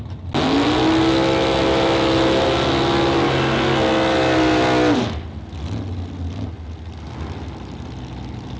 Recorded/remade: recorded